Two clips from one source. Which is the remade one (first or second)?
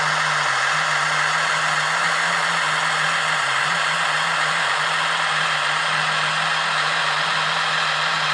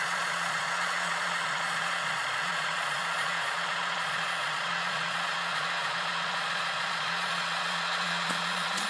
second